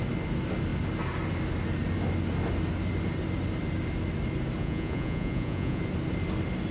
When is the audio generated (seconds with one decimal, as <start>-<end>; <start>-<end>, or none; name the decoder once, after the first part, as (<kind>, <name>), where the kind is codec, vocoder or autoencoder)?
4.6-5.8 (vocoder, Vocos)